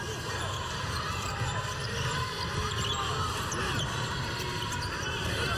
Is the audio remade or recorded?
recorded